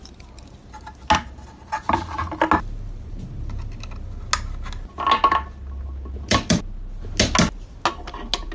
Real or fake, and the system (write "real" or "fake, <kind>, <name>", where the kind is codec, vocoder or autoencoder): real